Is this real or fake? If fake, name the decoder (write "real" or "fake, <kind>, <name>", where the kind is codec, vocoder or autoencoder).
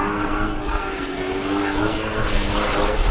fake, codec, SNAC